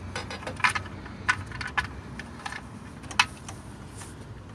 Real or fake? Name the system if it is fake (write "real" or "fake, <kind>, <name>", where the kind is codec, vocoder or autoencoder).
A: real